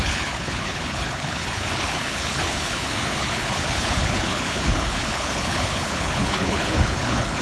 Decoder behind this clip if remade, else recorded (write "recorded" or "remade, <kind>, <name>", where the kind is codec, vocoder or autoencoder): remade, codec, HILCodec